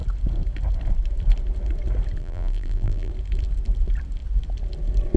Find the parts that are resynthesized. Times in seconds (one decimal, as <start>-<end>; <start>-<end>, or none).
2.2-3.1

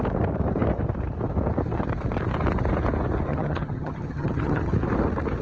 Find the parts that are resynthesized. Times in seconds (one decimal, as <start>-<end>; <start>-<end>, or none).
3.3-4.7

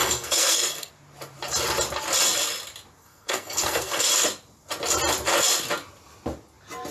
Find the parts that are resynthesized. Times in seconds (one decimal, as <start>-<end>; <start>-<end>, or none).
0.0-0.9; 3.0-4.1

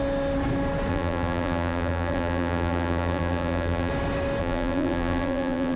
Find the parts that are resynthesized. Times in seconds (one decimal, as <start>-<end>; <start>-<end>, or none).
0.9-3.9; 4.4-5.8